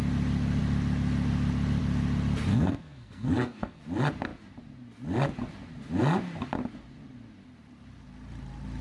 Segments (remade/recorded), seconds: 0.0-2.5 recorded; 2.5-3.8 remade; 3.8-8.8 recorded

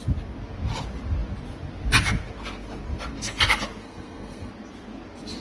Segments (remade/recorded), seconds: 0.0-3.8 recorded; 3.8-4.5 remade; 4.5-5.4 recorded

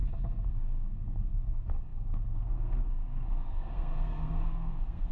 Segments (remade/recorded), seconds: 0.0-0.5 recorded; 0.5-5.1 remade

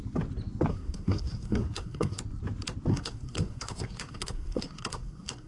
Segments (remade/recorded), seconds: 0.0-0.7 recorded; 0.7-2.2 remade; 2.2-2.9 recorded; 2.9-5.5 remade